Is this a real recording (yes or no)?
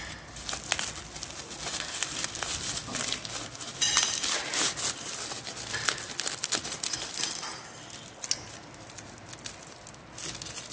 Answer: yes